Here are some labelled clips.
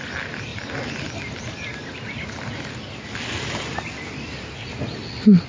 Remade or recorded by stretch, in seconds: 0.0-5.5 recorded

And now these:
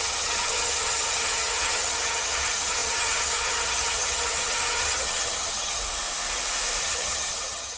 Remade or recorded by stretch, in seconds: 0.0-5.8 remade; 5.8-6.8 recorded; 6.8-7.8 remade

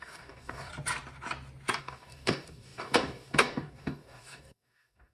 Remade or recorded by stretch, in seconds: 0.0-0.7 remade; 0.7-1.8 recorded; 1.8-5.1 remade

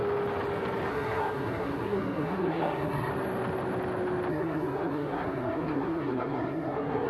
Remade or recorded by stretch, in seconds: 0.0-0.9 recorded; 0.9-3.1 remade; 3.1-4.3 recorded; 4.3-7.1 remade

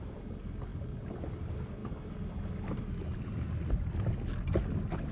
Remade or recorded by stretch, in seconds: 0.0-5.1 recorded

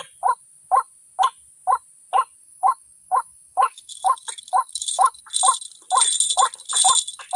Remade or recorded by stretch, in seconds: 0.0-2.4 recorded; 2.4-5.2 remade; 5.2-7.4 recorded